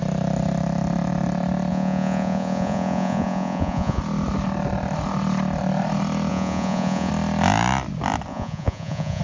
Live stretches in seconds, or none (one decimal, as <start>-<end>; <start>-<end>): 0.0-1.7; 4.0-6.3; 7.1-8.3